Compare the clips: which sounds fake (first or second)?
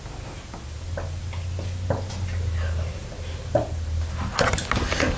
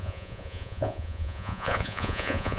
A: second